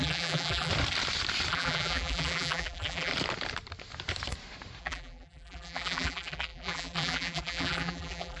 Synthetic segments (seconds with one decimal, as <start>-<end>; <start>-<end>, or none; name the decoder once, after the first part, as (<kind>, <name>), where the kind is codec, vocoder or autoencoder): 0.0-0.7 (vocoder, BigVGAN v2); 1.5-3.1; 4.8-8.4